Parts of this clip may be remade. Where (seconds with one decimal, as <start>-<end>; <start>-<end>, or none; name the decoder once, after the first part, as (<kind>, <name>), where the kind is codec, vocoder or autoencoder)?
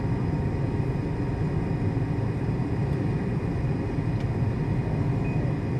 none